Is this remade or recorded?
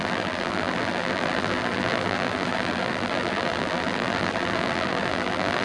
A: remade